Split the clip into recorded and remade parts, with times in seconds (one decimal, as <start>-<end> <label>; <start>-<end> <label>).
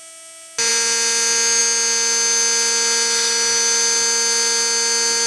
0.0-5.3 recorded